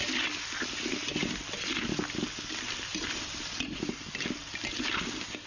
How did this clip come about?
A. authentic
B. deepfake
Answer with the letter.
A